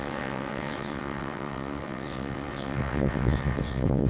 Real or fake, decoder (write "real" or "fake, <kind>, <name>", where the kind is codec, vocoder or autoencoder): fake, vocoder, WaveNeXt